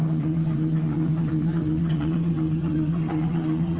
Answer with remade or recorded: remade